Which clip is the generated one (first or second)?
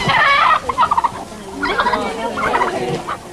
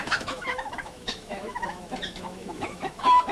second